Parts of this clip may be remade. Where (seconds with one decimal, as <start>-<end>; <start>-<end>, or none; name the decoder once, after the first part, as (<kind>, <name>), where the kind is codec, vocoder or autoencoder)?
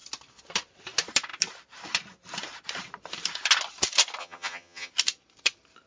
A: 4.2-4.9 (vocoder, HiFi-GAN)